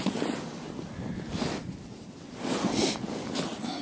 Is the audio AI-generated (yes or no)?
no